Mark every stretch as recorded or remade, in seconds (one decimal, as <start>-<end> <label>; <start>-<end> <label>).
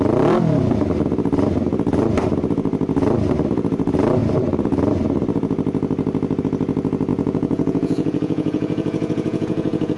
0.0-7.1 recorded; 7.1-10.0 remade